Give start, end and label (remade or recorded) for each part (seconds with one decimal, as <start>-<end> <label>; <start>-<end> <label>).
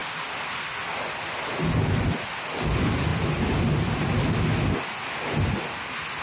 0.0-6.2 recorded